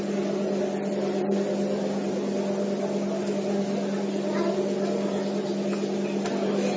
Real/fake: real